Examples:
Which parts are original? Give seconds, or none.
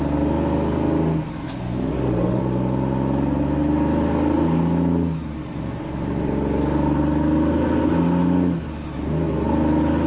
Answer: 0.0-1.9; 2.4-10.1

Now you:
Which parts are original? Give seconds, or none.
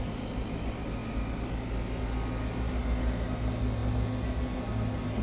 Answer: 0.0-5.2